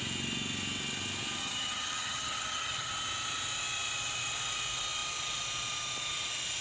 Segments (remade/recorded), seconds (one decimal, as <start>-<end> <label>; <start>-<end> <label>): 0.0-1.4 recorded; 1.4-2.9 remade; 2.9-6.6 recorded